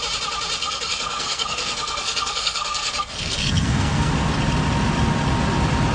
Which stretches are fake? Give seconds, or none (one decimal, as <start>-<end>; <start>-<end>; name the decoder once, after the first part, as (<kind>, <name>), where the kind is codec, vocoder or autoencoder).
0.6-4.1 (codec, SNAC)